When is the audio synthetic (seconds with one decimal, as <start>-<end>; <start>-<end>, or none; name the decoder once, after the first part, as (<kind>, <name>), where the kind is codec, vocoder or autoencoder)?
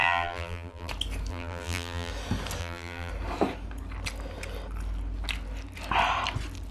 0.0-0.9 (vocoder, BigVGAN v2); 1.3-2.1; 2.6-3.1